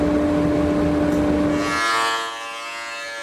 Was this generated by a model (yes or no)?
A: no